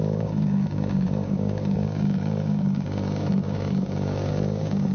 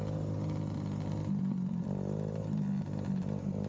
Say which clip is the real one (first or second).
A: second